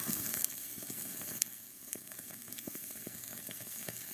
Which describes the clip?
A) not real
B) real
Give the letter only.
A